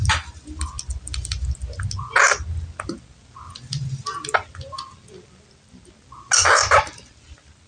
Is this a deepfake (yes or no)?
no